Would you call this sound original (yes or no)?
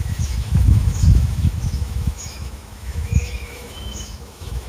no